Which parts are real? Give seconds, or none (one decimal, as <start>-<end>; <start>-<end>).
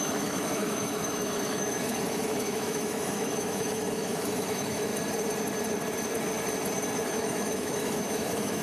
4.9-7.1